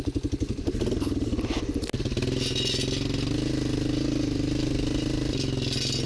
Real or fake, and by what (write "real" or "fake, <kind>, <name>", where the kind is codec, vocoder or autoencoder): real